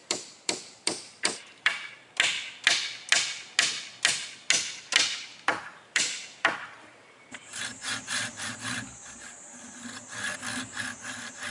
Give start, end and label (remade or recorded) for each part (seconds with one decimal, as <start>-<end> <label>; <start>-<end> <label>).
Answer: 0.0-1.9 remade; 1.9-5.3 recorded; 5.3-9.8 remade; 9.8-11.5 recorded